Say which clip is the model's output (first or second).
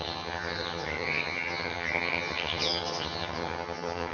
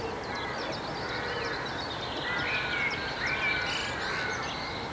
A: first